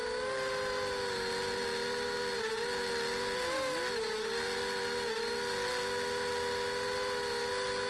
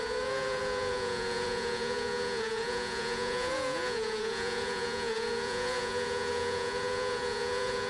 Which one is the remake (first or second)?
second